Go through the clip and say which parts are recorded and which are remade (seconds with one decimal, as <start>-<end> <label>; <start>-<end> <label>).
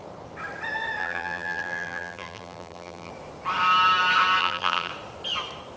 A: 0.0-1.0 recorded; 1.0-3.1 remade; 3.1-4.4 recorded; 4.4-4.9 remade; 4.9-5.8 recorded